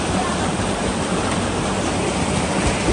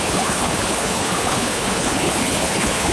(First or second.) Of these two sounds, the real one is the first